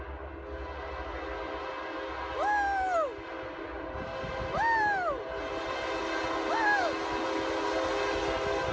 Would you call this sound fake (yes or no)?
no